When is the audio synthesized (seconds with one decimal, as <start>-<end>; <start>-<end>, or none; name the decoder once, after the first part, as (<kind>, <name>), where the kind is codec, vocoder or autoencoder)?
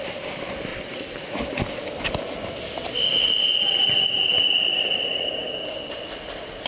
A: 0.0-0.7 (vocoder, BigVGAN v2); 3.4-6.7